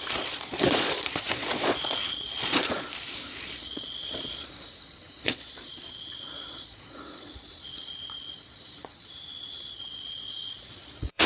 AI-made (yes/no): yes